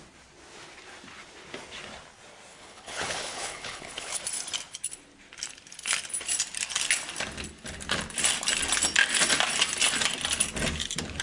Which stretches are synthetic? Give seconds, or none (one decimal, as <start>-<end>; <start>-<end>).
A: 2.5-4.2